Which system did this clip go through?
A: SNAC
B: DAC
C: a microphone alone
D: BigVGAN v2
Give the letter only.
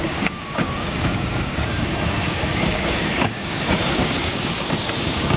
B